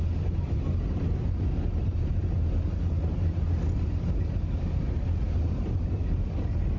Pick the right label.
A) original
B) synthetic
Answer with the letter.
A